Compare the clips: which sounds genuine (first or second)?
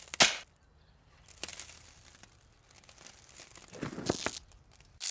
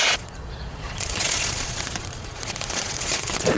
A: first